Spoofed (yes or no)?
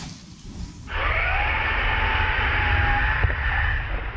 no